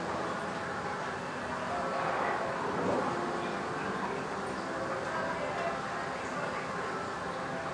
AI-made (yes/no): no